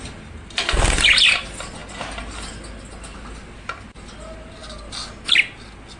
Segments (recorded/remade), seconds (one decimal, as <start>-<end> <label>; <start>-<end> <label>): 0.0-6.0 recorded

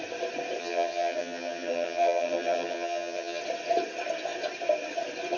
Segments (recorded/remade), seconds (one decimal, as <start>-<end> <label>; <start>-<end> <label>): 0.0-0.6 recorded; 0.6-3.4 remade; 3.4-5.4 recorded

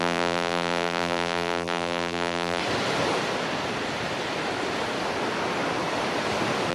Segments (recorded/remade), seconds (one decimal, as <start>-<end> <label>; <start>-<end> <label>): 0.0-2.6 remade; 2.6-6.7 recorded

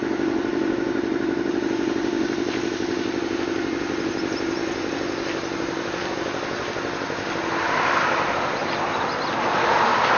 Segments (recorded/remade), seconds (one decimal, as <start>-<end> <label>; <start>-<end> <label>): 0.0-10.2 recorded

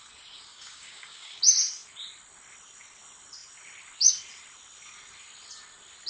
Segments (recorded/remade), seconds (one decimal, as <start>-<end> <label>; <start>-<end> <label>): 0.0-0.5 recorded; 0.5-1.4 remade; 1.4-6.1 recorded